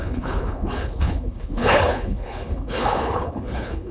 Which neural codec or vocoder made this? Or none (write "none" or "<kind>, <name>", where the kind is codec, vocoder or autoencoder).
codec, HILCodec